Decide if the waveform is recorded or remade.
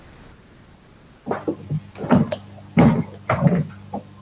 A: recorded